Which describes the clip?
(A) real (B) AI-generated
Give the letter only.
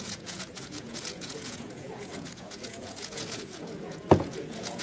B